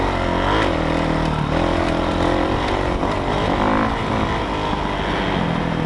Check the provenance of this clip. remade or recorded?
recorded